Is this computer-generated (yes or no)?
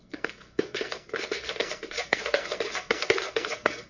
yes